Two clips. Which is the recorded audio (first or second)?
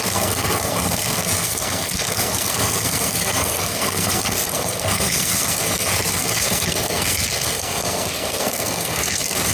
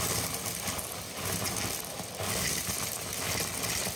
second